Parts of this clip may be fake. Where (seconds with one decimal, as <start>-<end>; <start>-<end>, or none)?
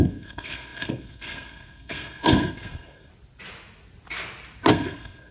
0.0-3.1; 4.7-5.3